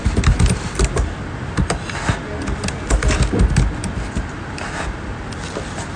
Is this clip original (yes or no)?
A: yes